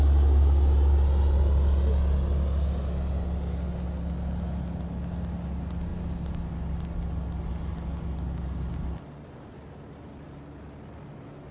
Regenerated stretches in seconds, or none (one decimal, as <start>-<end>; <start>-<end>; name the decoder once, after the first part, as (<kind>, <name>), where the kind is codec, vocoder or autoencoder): none